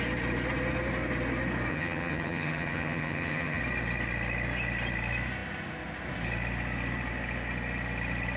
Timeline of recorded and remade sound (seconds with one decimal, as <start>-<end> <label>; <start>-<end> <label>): 0.0-1.7 recorded; 1.7-3.6 remade; 3.6-8.4 recorded